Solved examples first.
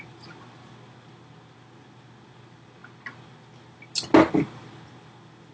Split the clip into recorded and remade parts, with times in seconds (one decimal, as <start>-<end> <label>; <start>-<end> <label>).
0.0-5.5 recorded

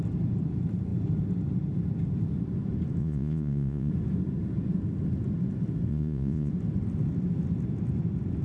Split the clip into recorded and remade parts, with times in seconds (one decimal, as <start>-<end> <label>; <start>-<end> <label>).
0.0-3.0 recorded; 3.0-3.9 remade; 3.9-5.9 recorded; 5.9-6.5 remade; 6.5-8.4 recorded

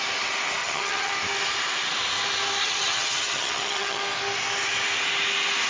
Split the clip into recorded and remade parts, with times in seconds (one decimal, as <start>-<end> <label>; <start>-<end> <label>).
0.0-0.6 recorded; 0.6-1.1 remade; 1.1-2.6 recorded; 2.6-4.0 remade; 4.0-5.7 recorded

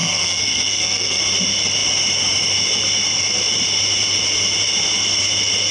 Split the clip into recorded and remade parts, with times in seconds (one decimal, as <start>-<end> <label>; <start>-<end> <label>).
0.0-1.2 remade; 1.2-5.7 recorded

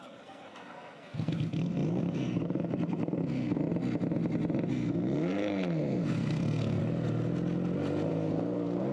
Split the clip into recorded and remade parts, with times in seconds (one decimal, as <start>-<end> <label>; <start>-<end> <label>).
0.0-3.6 remade; 3.6-4.7 recorded; 4.7-6.8 remade; 6.8-8.1 recorded; 8.1-8.9 remade

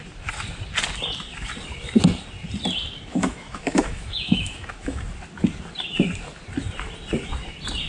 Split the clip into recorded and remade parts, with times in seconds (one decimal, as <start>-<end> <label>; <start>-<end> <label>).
0.0-3.1 recorded; 3.1-5.0 remade; 5.0-7.9 recorded